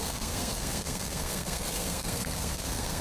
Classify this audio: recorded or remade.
remade